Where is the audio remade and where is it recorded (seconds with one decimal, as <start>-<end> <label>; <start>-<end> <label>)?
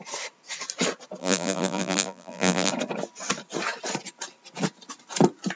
0.0-1.2 recorded; 1.2-2.7 remade; 2.7-5.6 recorded